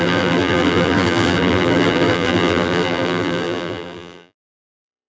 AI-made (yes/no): yes